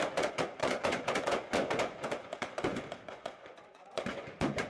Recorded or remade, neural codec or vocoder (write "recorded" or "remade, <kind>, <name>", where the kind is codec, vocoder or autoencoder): remade, vocoder, Vocos